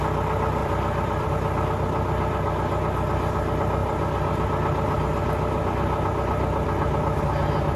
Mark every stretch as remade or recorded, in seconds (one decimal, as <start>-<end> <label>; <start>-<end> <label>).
0.0-0.6 recorded; 0.6-1.3 remade; 1.3-7.8 recorded